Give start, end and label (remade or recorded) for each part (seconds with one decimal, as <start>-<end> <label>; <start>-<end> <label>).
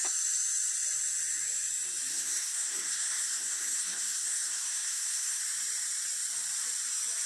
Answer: 0.0-2.1 recorded; 2.1-5.4 remade; 5.4-7.3 recorded